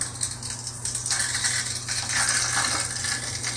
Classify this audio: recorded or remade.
recorded